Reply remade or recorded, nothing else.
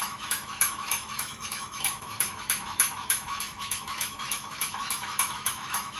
remade